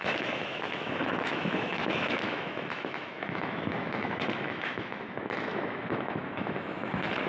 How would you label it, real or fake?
fake